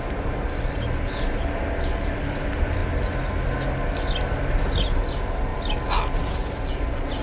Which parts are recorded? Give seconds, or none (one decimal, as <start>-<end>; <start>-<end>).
0.0-7.2